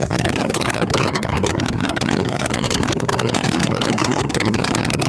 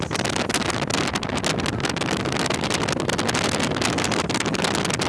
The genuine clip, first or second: second